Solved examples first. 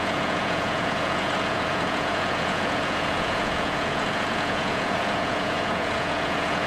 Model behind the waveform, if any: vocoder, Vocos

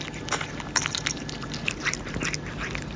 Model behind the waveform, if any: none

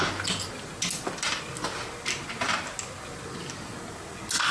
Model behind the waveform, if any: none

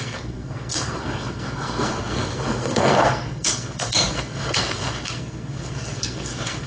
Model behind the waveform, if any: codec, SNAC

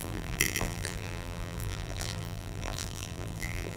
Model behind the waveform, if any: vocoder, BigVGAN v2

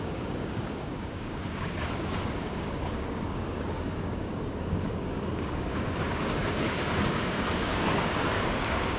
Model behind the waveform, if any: codec, DAC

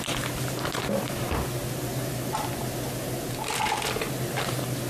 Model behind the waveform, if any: none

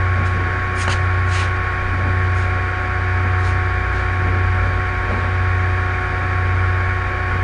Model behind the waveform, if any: none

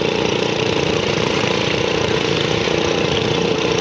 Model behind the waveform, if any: vocoder, Vocos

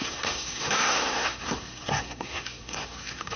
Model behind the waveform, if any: codec, SNAC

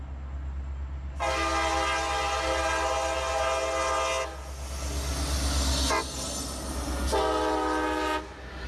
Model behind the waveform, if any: none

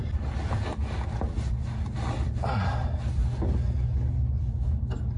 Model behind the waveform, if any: none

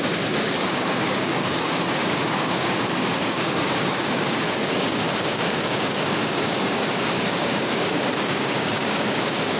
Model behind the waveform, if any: codec, DAC